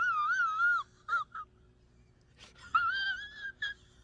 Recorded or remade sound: recorded